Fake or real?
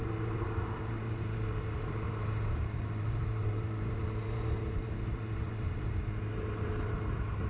fake